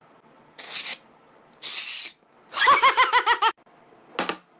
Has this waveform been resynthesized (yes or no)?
no